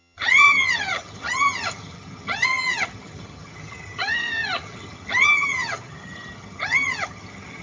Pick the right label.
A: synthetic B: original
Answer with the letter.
A